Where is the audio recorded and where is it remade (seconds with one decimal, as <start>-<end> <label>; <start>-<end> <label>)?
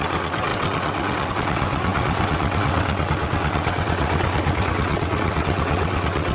0.0-6.3 remade